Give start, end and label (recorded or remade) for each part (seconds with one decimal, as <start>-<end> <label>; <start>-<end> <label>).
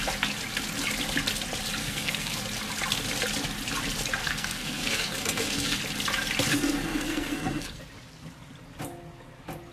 0.0-1.8 recorded; 1.8-2.4 remade; 2.4-4.2 recorded; 4.2-5.8 remade; 5.8-6.5 recorded; 6.5-7.8 remade; 7.8-9.7 recorded